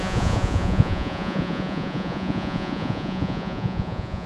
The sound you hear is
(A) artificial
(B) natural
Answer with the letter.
A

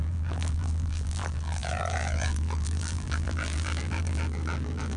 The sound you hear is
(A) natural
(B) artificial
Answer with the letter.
B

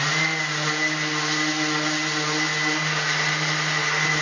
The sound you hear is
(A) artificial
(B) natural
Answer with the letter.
B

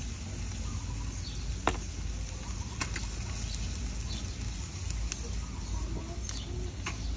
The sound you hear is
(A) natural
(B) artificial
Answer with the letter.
A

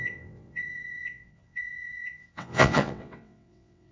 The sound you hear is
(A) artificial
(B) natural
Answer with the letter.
A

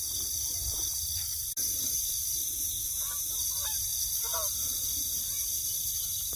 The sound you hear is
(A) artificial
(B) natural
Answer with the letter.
B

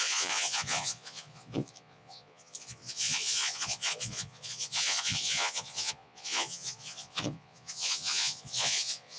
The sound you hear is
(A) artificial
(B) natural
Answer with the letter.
A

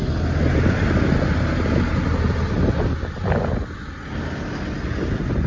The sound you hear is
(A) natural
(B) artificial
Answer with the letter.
A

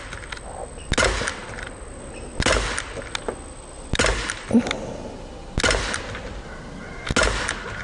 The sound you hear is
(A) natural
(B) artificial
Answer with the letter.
A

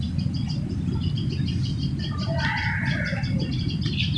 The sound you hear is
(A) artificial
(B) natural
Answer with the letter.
B